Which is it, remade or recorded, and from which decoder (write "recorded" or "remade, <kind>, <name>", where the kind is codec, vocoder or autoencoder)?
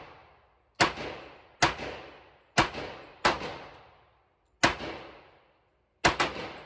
recorded